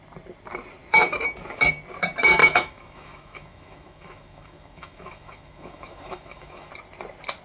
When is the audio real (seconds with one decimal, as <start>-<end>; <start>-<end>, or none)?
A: 0.0-2.4; 6.7-7.4